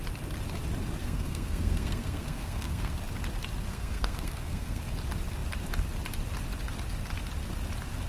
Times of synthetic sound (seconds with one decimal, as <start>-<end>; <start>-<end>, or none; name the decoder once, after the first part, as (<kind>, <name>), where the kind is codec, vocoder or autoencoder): 1.0-3.0 (codec, SNAC); 3.7-4.8